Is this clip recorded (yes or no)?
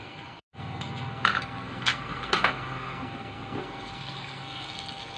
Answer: no